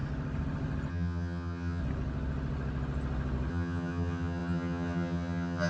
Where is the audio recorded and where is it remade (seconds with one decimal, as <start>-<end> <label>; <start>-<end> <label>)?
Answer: 0.0-0.9 recorded; 0.9-1.8 remade; 1.8-3.5 recorded; 3.5-5.7 remade